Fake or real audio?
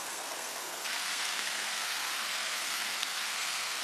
fake